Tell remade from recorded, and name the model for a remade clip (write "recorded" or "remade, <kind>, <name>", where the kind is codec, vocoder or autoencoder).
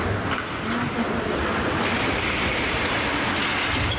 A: recorded